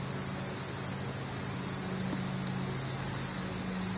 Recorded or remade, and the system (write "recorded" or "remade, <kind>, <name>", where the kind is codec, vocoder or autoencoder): recorded